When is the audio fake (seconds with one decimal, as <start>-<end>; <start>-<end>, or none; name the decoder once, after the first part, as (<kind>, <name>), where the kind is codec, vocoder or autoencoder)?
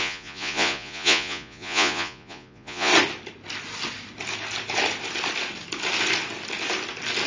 0.0-2.9 (vocoder, Vocos)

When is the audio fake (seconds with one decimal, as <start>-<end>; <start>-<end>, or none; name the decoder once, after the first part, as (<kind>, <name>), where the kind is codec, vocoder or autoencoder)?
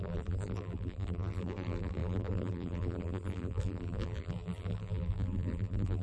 0.0-6.0 (vocoder, BigVGAN v2)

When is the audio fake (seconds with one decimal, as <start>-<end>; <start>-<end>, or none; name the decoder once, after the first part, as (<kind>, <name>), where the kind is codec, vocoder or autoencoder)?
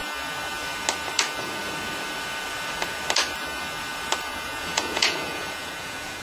4.3-6.2 (vocoder, Vocos)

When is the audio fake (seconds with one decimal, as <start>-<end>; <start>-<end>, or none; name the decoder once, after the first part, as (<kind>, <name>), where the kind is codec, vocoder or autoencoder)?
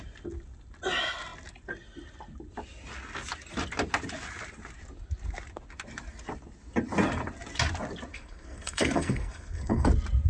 8.1-9.9 (codec, SNAC)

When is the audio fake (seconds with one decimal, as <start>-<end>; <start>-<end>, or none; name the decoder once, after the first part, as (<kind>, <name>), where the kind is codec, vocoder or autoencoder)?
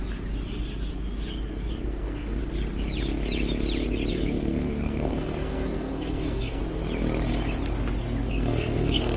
1.7-2.4 (codec, SNAC); 4.1-6.6; 8.3-9.2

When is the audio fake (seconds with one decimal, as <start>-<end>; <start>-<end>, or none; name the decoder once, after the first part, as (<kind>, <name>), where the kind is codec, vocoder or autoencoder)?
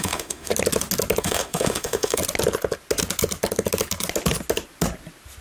0.0-0.5 (autoencoder, DAC-VAE); 1.2-2.2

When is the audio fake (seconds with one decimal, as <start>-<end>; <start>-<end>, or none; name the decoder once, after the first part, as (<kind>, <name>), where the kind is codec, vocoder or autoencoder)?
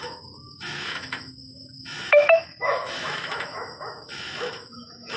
0.0-5.2 (autoencoder, DAC-VAE)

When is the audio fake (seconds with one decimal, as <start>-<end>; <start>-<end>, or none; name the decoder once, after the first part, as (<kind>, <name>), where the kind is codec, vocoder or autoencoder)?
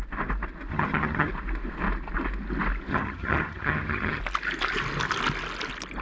0.7-1.3 (vocoder, HiFi-GAN); 2.9-4.2